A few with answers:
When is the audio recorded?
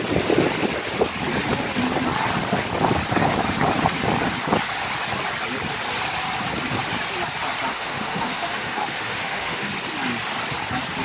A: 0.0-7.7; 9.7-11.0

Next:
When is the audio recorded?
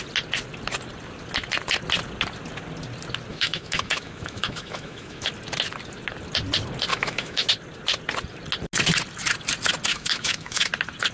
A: 0.0-3.3; 5.3-6.9; 7.5-9.9; 10.7-11.1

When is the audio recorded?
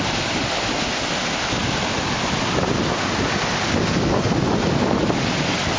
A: 0.0-5.8